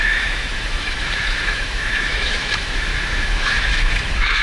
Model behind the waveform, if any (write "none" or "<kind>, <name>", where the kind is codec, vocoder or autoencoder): autoencoder, DAC-VAE